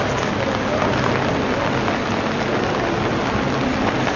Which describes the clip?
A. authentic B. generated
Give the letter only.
A